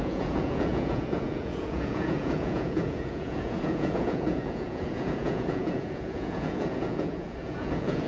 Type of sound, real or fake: fake